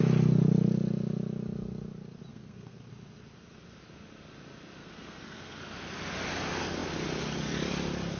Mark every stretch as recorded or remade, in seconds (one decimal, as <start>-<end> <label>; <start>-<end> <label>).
0.0-2.3 recorded; 2.3-2.9 remade; 2.9-4.8 recorded; 4.8-5.6 remade; 5.6-8.2 recorded